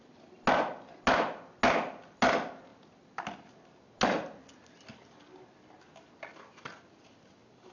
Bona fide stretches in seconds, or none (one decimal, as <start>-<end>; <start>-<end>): 0.0-7.7